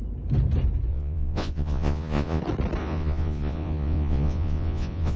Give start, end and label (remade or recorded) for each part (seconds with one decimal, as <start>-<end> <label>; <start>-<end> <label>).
0.0-0.9 recorded; 0.9-2.4 remade; 2.4-2.8 recorded; 2.8-5.2 remade